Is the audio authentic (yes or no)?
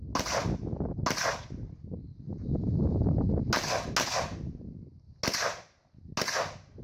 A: yes